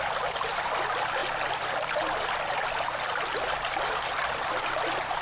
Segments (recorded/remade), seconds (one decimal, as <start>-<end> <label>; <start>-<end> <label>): 0.0-5.2 recorded